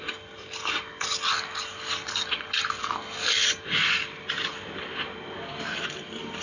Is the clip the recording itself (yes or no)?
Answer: yes